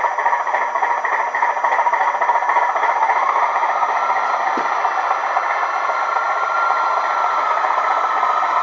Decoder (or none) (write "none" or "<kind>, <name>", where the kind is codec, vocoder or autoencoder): none